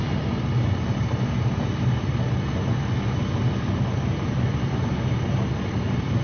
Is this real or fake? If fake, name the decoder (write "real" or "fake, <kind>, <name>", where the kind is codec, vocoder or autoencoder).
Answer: real